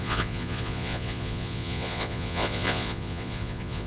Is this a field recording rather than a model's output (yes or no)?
no